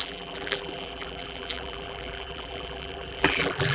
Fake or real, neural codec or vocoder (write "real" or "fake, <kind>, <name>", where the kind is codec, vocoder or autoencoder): fake, vocoder, BigVGAN v2